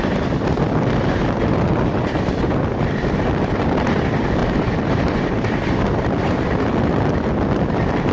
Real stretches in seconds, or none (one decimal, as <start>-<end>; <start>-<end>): 0.0-4.4; 6.0-8.1

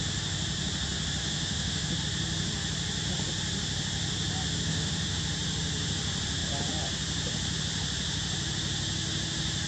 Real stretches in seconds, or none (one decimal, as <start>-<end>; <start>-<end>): 0.0-1.2; 1.9-4.7; 5.2-9.7

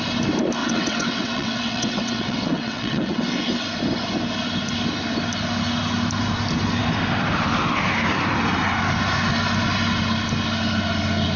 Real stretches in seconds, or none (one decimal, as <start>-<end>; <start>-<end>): 0.0-0.6; 3.2-11.4

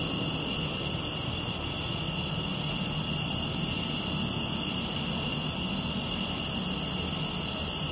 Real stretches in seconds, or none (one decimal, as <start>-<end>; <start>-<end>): 0.0-7.9